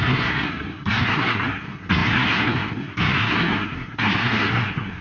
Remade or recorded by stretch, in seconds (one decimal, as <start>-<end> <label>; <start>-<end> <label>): 0.0-5.0 remade

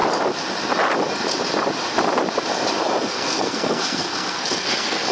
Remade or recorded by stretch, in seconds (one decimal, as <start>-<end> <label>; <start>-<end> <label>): 0.0-3.1 recorded; 3.1-5.1 remade

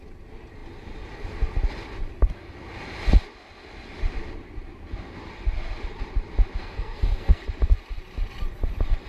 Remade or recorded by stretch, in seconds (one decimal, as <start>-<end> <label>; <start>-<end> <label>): 0.0-6.6 recorded; 6.6-7.4 remade; 7.4-9.1 recorded

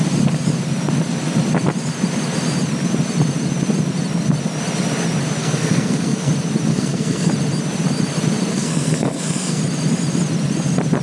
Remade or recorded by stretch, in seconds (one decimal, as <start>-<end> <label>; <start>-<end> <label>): 0.0-5.4 recorded; 5.4-6.3 remade; 6.3-6.7 recorded; 6.7-7.3 remade; 7.3-8.5 recorded; 8.5-9.6 remade; 9.6-11.0 recorded

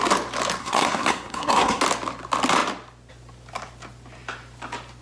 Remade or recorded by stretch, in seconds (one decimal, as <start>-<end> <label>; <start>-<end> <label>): 0.0-0.6 recorded; 0.6-1.8 remade; 1.8-5.0 recorded